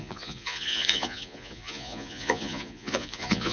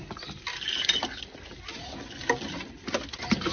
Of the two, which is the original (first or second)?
second